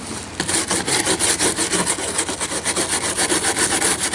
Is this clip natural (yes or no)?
yes